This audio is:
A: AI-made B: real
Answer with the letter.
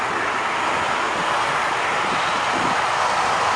B